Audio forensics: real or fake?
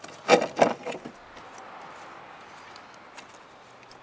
real